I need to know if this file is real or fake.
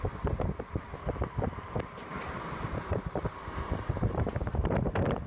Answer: fake